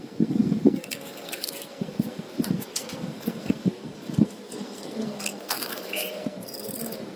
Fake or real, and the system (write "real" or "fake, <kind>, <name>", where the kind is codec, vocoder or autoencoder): fake, codec, SNAC